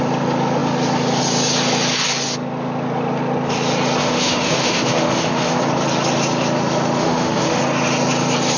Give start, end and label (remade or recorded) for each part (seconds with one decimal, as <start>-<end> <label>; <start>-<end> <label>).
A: 0.0-4.0 recorded; 4.0-5.6 remade; 5.6-7.0 recorded; 7.0-7.6 remade; 7.6-8.6 recorded